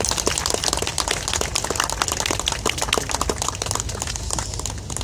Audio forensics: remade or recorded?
recorded